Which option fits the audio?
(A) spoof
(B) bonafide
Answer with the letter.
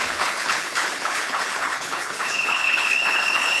A